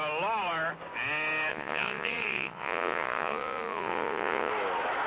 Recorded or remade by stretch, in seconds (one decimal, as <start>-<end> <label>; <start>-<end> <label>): 0.0-1.5 recorded; 1.5-4.5 remade; 4.5-5.1 recorded